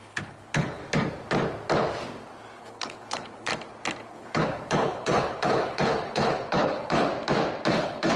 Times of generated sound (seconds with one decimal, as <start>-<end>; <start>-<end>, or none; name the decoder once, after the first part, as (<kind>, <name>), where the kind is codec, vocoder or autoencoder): 0.0-0.8 (codec, HILCodec); 2.6-3.5; 4.1-7.1; 7.7-8.2